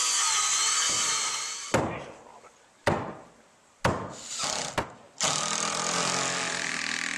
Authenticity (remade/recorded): recorded